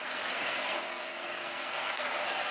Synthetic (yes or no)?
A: yes